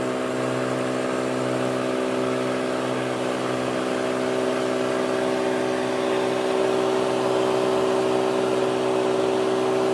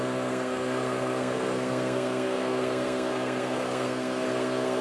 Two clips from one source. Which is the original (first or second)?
first